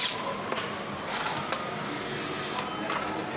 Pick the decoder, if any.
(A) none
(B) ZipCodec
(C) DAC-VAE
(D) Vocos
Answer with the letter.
A